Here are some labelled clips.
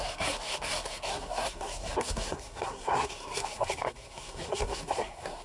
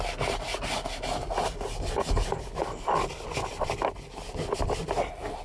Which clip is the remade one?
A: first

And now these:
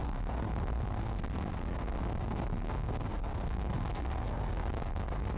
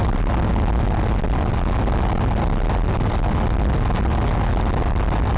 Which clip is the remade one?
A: first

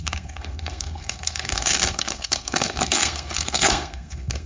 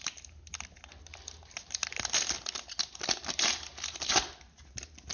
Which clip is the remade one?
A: first